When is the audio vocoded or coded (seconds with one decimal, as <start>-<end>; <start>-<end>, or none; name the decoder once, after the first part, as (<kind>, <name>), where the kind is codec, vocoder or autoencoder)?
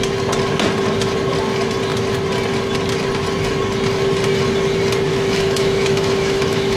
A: 5.1-6.8 (autoencoder, DAC-VAE)